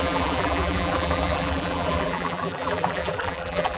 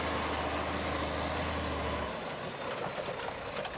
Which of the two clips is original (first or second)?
second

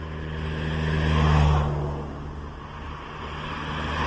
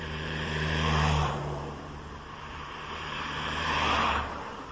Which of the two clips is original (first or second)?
first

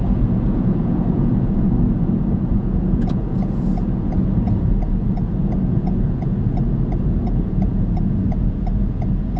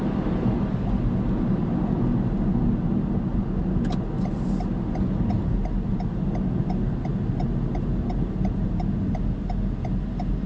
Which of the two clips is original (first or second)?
second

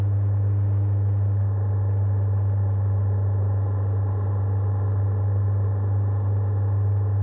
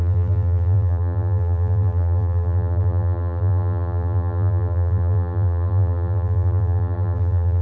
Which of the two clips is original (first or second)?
first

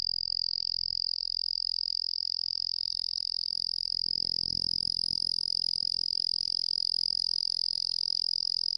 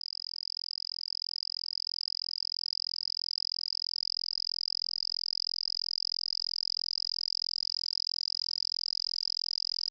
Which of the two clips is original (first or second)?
second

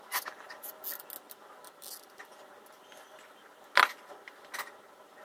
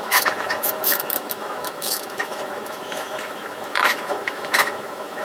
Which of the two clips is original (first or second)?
first